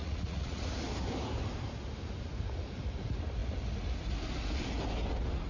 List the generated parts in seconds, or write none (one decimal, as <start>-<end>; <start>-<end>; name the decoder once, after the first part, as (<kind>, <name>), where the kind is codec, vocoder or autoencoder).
0.0-0.6 (vocoder, Vocos)